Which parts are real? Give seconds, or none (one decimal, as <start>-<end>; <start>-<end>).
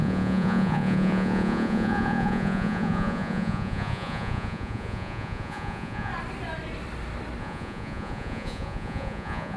6.1-7.4